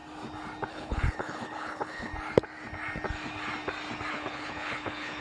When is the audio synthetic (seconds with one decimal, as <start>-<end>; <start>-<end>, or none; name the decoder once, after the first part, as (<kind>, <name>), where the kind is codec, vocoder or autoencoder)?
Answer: 0.7-2.1 (codec, HILCodec); 4.1-5.2